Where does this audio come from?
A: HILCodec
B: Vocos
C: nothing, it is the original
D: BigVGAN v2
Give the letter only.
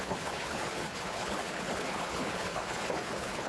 A